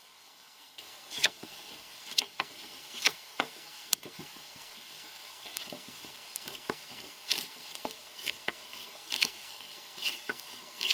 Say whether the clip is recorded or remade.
remade